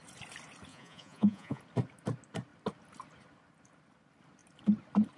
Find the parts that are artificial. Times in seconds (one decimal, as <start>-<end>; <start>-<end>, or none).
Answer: 0.7-1.6